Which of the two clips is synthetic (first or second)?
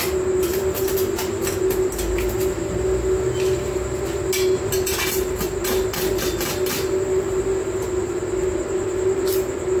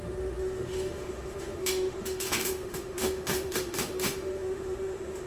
second